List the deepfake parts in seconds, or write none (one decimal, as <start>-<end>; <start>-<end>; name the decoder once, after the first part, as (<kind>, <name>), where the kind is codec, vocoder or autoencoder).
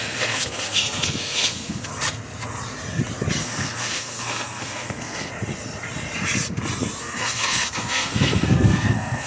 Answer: 0.0-1.9 (codec, SNAC); 3.4-5.3; 7.0-9.3